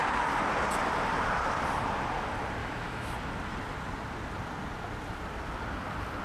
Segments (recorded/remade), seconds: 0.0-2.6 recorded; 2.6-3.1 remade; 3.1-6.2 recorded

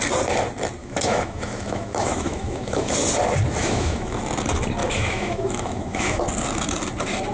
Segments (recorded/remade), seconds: 0.0-0.8 recorded; 0.8-2.9 remade; 2.9-3.6 recorded; 3.6-4.2 remade; 4.2-4.8 recorded; 4.8-6.2 remade; 6.2-7.3 recorded